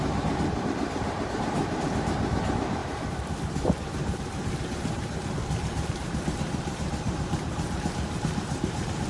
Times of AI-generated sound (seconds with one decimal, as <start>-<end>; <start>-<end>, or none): 0.0-9.1